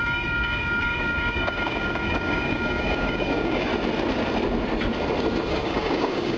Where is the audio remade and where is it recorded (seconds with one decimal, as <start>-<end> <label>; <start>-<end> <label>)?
0.0-3.7 remade; 3.7-5.5 recorded; 5.5-6.4 remade